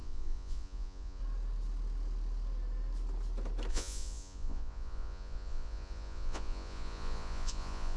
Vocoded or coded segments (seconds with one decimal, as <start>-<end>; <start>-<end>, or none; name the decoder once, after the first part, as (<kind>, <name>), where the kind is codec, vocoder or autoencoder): 0.0-1.2 (vocoder, Vocos); 3.7-8.0